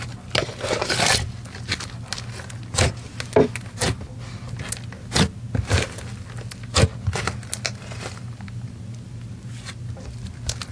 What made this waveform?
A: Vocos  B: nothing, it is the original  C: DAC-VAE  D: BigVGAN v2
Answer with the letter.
B